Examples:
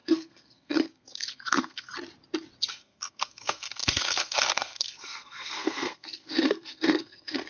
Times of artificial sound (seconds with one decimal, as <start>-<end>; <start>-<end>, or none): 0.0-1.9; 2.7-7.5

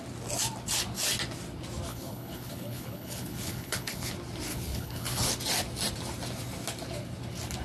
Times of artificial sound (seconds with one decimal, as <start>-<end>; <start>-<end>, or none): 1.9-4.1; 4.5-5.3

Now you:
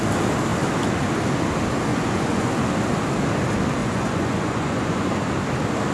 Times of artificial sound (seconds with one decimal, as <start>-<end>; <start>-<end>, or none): 1.9-2.5; 3.8-5.1

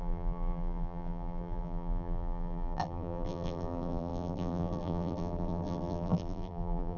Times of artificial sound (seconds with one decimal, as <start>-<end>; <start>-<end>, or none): 0.0-7.0

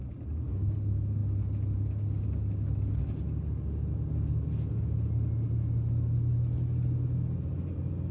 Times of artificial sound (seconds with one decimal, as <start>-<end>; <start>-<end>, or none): none